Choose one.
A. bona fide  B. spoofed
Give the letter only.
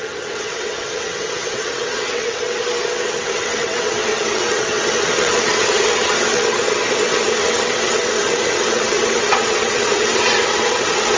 B